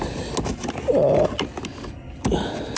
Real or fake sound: real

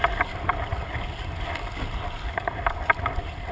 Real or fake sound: real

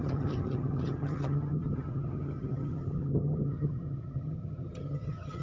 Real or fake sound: fake